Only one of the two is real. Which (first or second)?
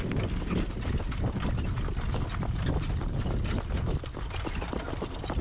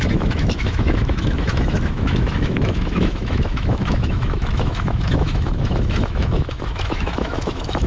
first